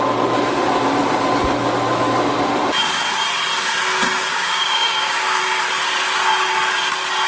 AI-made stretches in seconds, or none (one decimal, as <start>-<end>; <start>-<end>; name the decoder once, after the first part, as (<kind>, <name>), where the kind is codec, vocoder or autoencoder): 4.3-5.4 (codec, DAC)